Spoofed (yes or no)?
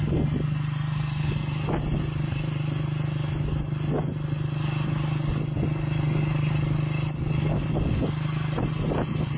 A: no